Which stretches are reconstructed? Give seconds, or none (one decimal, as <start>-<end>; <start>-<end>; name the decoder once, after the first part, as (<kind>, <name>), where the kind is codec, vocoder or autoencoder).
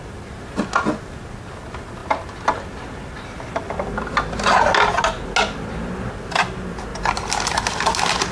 none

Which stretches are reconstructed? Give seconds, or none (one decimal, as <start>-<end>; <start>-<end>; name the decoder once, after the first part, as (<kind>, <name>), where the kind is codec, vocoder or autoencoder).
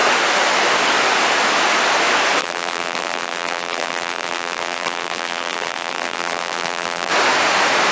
2.4-7.1 (vocoder, BigVGAN v2)